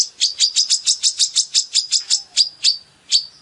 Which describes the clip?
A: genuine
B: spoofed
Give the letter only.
A